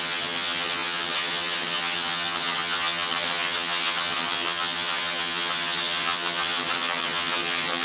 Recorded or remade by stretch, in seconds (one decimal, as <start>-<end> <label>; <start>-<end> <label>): 0.0-7.8 remade